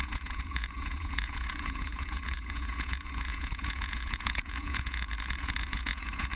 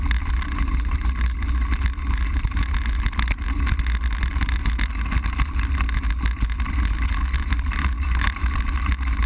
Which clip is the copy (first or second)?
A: first